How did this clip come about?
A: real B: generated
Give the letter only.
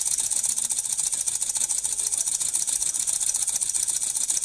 B